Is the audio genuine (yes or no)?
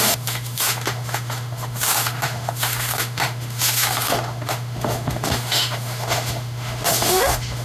no